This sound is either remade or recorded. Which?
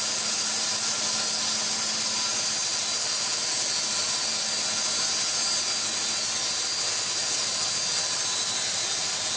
recorded